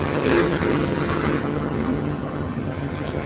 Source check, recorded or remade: remade